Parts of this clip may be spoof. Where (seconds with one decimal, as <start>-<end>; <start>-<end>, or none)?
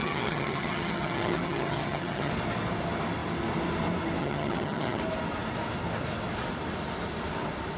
0.0-2.3; 4.2-5.0